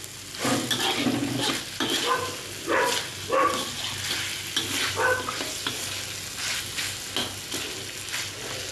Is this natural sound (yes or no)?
yes